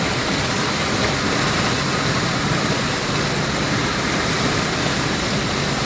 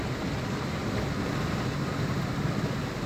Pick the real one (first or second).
second